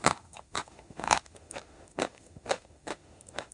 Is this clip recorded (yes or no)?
no